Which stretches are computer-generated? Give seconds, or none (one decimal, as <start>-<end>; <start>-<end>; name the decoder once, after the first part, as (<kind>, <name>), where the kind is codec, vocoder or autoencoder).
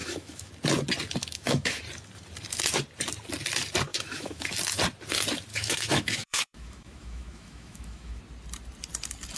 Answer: 0.0-0.5 (autoencoder, DAC-VAE); 1.2-1.8; 3.9-4.5; 5.5-8.2